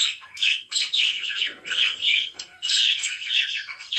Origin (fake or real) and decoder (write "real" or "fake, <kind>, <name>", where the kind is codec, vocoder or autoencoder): fake, codec, SNAC